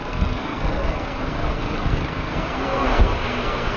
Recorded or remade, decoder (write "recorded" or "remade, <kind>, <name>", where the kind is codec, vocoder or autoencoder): remade, codec, SNAC